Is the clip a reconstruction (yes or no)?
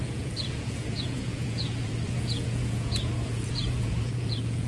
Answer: yes